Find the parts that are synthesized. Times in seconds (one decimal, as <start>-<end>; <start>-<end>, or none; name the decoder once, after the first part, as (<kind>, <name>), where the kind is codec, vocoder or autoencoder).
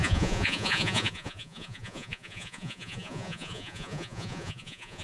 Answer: 0.0-5.0 (vocoder, Vocos)